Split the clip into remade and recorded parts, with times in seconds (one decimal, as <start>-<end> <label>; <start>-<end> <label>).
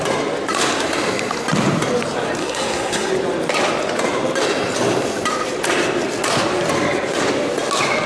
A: 0.0-2.4 recorded; 2.4-3.1 remade; 3.1-8.1 recorded